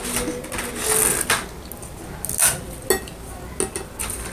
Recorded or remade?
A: recorded